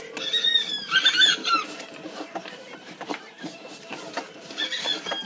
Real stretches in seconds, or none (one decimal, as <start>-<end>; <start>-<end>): 0.0-1.4; 4.5-5.2